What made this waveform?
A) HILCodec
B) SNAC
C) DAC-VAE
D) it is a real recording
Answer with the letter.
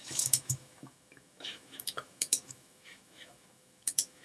C